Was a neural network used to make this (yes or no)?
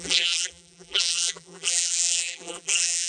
yes